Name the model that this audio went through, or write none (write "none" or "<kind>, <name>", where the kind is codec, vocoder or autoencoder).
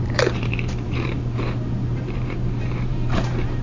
vocoder, BigVGAN v2